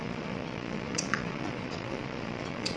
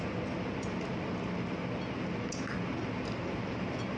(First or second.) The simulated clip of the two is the first